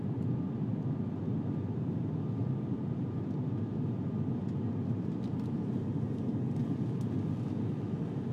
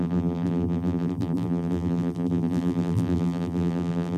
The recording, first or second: first